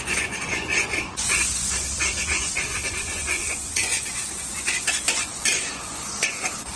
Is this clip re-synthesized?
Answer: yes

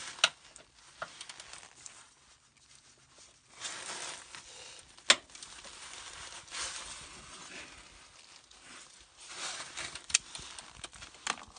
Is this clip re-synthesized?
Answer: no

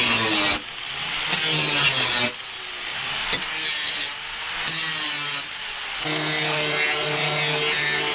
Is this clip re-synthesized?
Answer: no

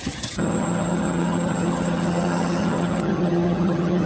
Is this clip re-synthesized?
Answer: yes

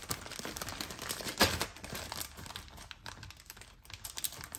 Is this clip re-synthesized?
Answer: no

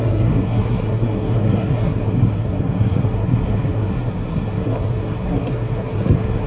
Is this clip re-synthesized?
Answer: yes